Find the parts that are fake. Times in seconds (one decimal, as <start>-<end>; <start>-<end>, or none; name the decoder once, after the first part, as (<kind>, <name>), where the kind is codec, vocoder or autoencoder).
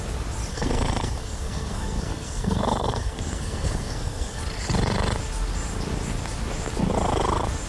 0.5-4.4 (codec, SNAC)